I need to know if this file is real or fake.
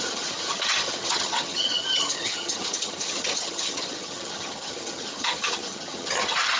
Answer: fake